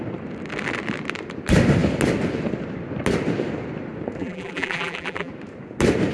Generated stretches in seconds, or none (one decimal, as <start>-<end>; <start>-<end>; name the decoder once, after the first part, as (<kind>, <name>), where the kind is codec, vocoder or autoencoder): 4.2-5.3 (vocoder, BigVGAN v2)